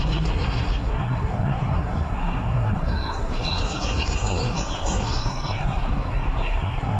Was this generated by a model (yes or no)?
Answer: yes